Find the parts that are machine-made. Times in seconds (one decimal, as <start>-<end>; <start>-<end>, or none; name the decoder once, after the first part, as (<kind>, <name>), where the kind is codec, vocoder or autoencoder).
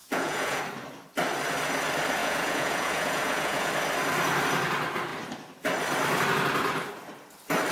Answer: 0.0-0.6 (vocoder, Vocos); 2.2-3.7